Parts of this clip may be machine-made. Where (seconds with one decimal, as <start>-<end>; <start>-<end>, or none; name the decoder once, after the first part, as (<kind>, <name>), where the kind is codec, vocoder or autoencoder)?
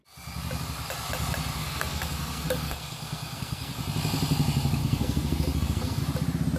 1.6-3.7 (codec, SNAC); 4.8-6.0